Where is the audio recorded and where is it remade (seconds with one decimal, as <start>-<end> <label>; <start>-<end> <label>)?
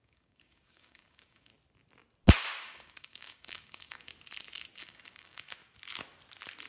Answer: 0.0-1.5 remade; 1.5-2.6 recorded; 2.6-4.1 remade; 4.1-4.8 recorded; 4.8-5.6 remade; 5.6-6.7 recorded